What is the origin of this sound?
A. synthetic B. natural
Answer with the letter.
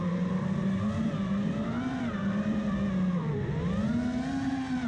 B